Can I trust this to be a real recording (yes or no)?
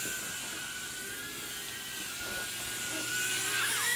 yes